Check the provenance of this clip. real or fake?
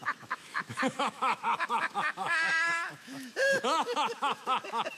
fake